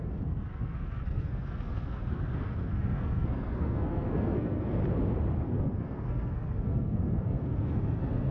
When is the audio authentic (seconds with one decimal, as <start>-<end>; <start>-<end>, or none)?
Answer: 4.8-5.4